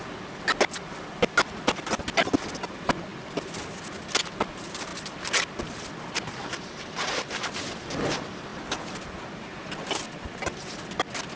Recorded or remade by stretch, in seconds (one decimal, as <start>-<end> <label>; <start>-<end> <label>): 0.0-11.4 recorded